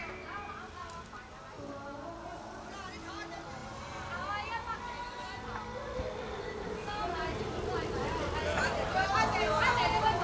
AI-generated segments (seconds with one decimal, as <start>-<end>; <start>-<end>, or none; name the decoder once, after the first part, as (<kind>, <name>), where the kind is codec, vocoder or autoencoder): none